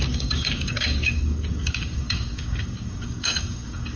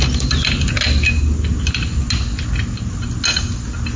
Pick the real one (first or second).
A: second